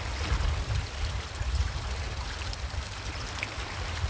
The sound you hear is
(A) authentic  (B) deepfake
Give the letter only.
A